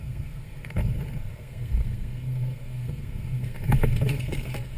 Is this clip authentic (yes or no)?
no